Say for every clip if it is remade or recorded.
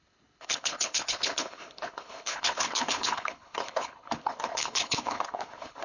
remade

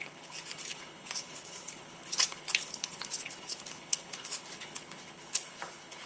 remade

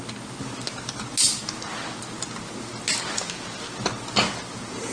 recorded